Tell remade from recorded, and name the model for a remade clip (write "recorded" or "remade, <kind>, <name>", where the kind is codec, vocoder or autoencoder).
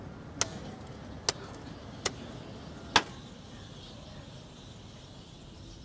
recorded